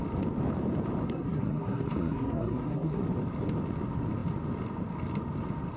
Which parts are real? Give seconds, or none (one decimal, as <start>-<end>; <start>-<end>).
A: 0.0-1.0; 3.0-5.8